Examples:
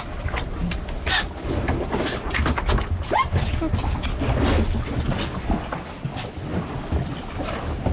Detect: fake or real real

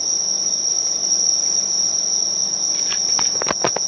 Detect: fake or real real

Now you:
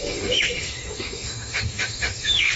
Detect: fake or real fake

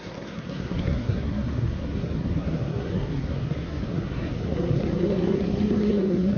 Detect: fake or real fake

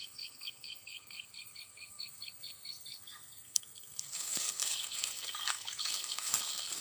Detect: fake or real fake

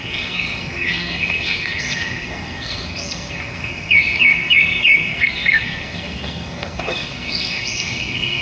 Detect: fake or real fake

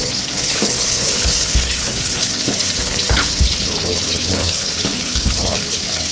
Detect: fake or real fake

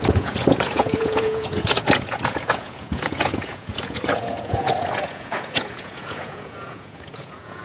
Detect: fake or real fake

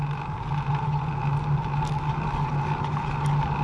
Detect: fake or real real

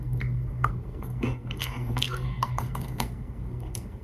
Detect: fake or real fake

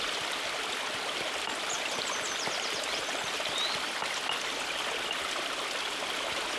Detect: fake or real real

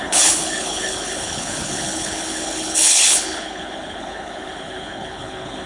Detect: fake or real fake